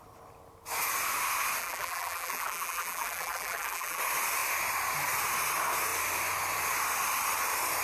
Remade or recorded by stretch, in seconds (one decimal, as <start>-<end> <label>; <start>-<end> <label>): 0.0-1.6 recorded; 1.6-4.0 remade; 4.0-7.8 recorded